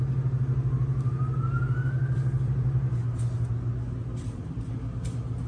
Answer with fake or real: real